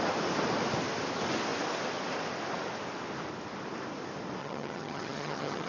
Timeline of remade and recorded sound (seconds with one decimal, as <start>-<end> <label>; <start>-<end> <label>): 0.0-4.4 recorded; 4.4-5.7 remade